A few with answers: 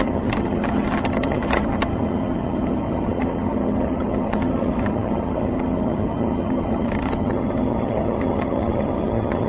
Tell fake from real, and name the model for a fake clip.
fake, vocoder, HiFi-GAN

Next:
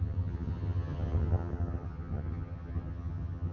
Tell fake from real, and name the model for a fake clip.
fake, vocoder, HiFi-GAN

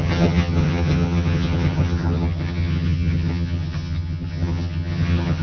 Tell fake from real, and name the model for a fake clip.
fake, vocoder, HiFi-GAN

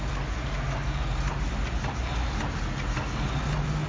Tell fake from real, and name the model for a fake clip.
real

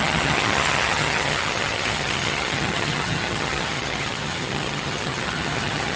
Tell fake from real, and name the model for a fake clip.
fake, vocoder, HiFi-GAN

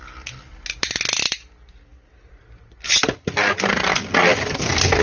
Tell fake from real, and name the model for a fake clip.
real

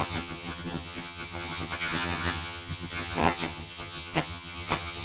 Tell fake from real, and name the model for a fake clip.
fake, vocoder, HiFi-GAN